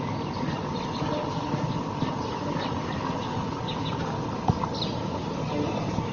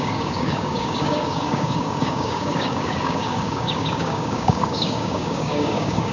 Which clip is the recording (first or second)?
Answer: first